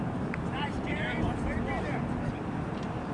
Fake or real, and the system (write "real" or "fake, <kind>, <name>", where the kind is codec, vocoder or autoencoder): fake, vocoder, BigVGAN v2